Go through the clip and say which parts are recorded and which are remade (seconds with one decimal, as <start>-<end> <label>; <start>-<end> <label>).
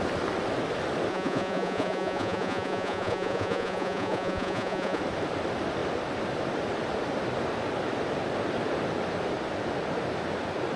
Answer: 0.0-1.1 recorded; 1.1-5.0 remade; 5.0-10.8 recorded